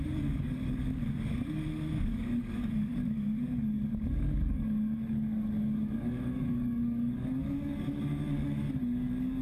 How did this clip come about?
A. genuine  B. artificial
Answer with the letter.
B